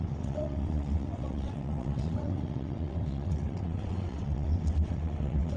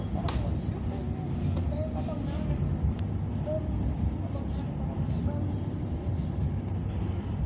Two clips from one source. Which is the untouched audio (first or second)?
second